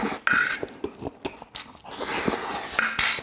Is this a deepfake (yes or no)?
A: no